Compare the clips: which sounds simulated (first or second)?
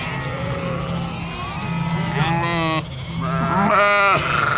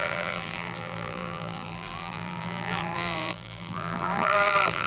second